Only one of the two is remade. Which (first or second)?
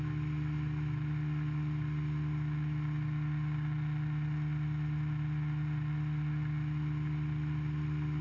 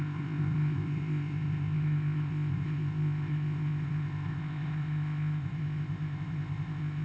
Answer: second